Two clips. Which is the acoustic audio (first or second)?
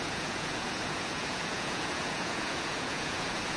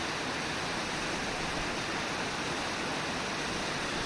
second